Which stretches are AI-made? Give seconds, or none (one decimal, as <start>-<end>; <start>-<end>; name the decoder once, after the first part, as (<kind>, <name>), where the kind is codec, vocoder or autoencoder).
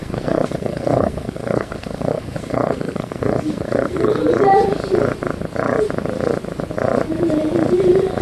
0.0-4.2 (codec, SNAC)